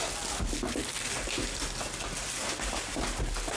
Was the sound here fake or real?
real